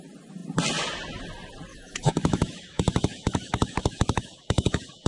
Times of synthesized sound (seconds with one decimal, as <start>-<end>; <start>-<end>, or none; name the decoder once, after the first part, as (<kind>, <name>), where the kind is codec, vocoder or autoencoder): 1.7-5.1 (autoencoder, DAC-VAE)

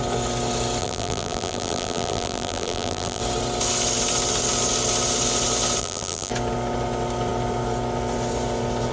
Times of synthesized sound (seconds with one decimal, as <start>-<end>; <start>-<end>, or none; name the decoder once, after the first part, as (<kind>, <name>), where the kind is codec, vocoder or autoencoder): 0.8-3.2 (vocoder, BigVGAN v2); 5.8-6.3

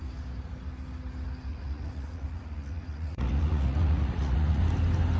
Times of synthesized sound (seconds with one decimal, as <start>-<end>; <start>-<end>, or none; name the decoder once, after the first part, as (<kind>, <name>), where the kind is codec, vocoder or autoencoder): 1.5-4.6 (vocoder, Vocos)

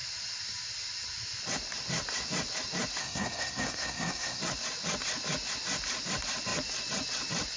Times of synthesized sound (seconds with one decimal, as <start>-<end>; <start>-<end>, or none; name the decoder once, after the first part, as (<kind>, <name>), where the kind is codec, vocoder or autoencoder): 3.0-4.4 (codec, SNAC)

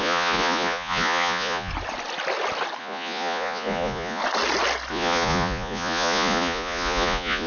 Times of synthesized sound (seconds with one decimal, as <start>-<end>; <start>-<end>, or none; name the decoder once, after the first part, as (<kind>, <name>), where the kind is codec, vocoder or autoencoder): 0.0-1.7 (vocoder, Vocos); 2.8-4.2; 4.9-7.5

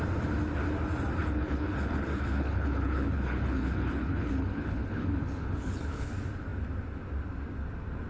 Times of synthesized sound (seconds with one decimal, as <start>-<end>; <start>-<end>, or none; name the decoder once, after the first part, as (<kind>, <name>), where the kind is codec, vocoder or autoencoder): 1.2-6.1 (codec, HILCodec)